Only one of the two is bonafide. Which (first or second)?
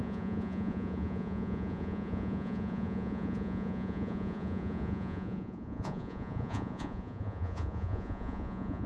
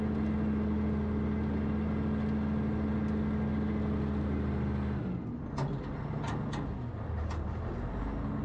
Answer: second